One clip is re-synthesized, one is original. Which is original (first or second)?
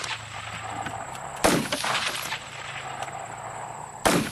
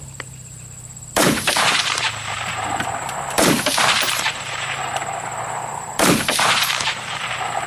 first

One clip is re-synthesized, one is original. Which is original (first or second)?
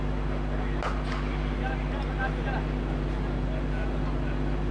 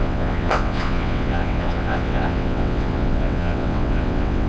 first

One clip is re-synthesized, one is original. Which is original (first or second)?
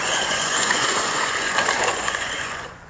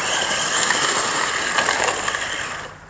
second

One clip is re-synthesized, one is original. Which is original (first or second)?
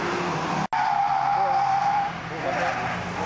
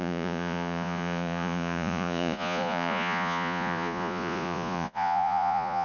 first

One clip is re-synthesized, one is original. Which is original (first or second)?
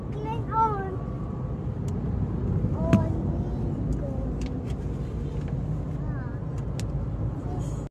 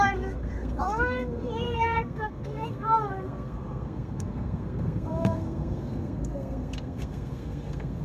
first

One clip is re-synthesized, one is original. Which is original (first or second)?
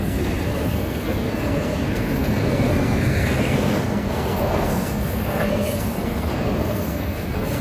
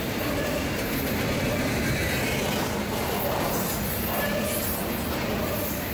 second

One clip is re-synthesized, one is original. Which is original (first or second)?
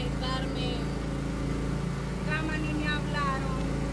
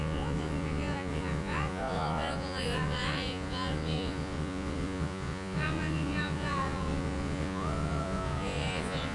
first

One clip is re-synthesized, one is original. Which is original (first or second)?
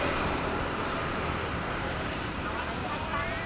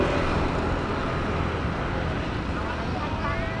second